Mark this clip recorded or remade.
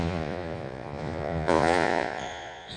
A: remade